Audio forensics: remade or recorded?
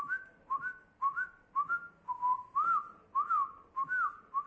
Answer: recorded